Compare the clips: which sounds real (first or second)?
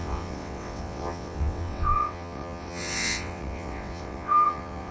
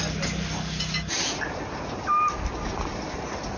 second